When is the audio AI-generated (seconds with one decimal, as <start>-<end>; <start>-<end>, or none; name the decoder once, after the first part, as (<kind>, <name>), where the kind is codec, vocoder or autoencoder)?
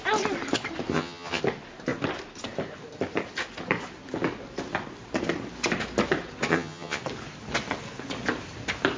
0.9-1.4 (vocoder, HiFi-GAN); 6.5-7.0